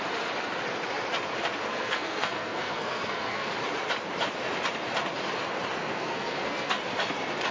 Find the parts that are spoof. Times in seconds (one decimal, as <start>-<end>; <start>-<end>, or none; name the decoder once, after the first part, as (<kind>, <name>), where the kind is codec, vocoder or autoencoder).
1.7-3.5 (codec, SNAC); 5.8-6.8